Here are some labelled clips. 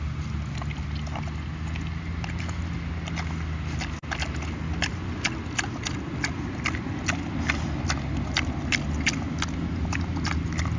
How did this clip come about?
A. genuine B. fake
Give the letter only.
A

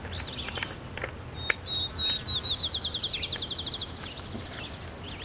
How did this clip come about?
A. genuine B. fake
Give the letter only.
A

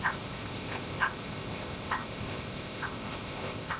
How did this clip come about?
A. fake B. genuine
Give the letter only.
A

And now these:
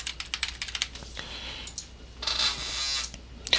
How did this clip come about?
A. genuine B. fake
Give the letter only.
A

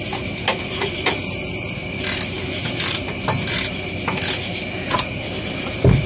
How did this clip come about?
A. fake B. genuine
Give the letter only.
B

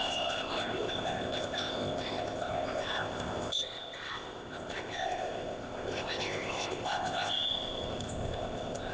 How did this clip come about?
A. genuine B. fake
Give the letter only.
B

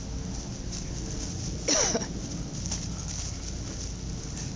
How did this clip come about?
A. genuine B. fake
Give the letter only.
A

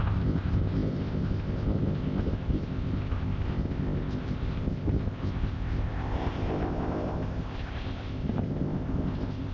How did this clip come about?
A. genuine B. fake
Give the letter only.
B